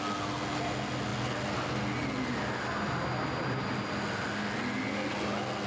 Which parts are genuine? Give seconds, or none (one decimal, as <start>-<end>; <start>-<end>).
0.0-5.7